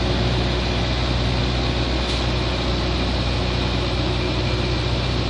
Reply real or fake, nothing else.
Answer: real